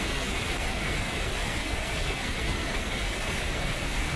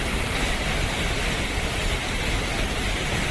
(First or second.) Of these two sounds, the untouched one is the second